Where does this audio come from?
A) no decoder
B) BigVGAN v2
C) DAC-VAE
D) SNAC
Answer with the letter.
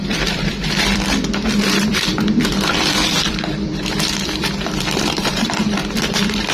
B